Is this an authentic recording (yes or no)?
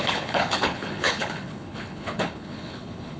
no